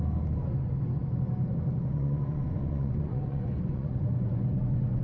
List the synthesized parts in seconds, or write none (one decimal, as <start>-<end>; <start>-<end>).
1.9-5.0